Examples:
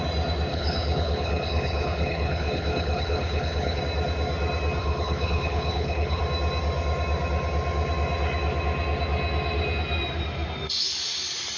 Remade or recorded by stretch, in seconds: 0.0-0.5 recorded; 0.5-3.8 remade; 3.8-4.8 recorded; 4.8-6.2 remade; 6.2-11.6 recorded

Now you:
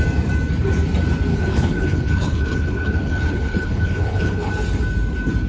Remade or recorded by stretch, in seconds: 0.0-1.3 recorded; 1.3-4.5 remade; 4.5-5.5 recorded

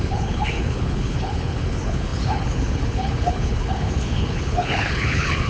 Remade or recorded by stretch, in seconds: 0.0-5.5 remade

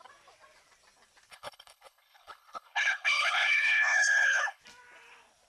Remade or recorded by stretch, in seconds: 0.0-1.3 recorded; 1.3-4.6 remade; 4.6-5.5 recorded

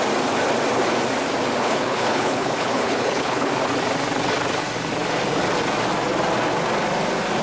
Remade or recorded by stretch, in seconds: 0.0-1.6 recorded; 1.6-3.5 remade; 3.5-7.4 recorded